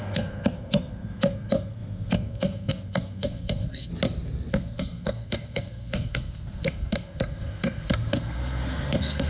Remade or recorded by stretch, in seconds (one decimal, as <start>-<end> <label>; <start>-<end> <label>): 0.0-3.9 remade; 3.9-4.5 recorded; 4.5-9.3 remade